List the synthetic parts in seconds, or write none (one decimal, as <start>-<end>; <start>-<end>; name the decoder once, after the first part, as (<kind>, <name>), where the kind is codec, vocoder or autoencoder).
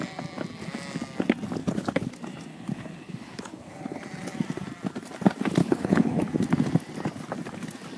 1.6-2.1 (codec, HILCodec); 2.5-4.0; 5.6-6.2